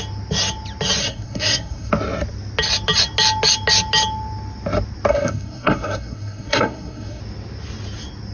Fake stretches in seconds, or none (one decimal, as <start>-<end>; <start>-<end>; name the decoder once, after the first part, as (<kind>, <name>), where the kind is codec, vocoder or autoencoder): 1.0-1.9 (codec, SNAC); 5.1-7.2